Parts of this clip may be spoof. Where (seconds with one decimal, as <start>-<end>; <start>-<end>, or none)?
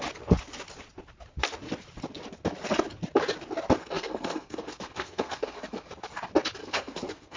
3.8-5.9; 6.6-7.4